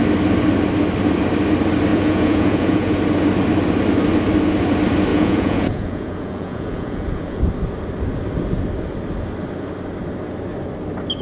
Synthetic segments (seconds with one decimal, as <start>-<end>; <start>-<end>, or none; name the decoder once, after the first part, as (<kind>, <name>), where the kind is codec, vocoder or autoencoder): 1.9-3.0 (vocoder, Vocos); 5.1-7.4